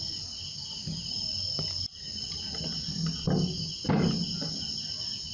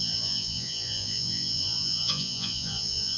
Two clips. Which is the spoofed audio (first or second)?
second